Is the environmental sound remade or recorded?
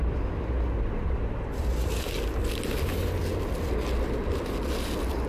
recorded